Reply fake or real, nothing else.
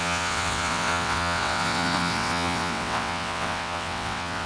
fake